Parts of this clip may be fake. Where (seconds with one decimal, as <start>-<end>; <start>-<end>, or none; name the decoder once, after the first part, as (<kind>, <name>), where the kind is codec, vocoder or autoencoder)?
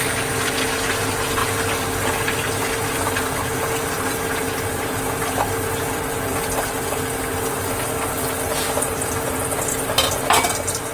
none